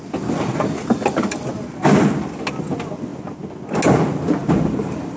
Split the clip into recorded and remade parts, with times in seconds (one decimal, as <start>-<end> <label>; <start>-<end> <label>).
0.0-4.4 recorded; 4.4-5.2 remade